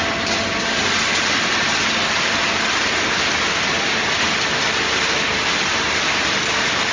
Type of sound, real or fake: real